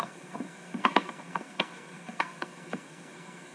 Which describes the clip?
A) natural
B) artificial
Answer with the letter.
B